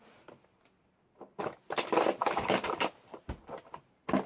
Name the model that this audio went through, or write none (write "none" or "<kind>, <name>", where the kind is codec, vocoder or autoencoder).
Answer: none